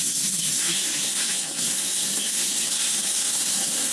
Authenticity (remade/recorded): remade